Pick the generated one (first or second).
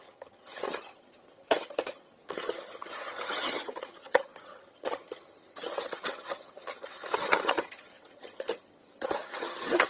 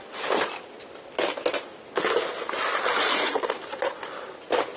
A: first